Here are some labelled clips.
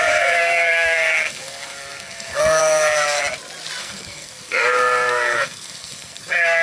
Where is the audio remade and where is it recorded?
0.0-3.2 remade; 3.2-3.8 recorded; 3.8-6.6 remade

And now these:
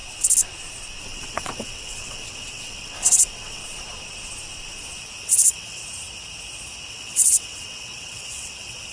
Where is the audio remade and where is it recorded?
0.0-1.0 recorded; 1.0-3.6 remade; 3.6-5.2 recorded; 5.2-5.8 remade; 5.8-6.9 recorded; 6.9-8.9 remade